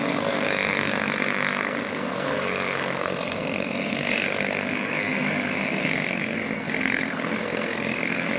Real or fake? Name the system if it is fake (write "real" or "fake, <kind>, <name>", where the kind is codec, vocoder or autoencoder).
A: fake, codec, SNAC